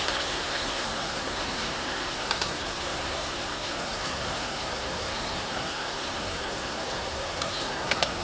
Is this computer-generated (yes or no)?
yes